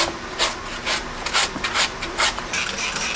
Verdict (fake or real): real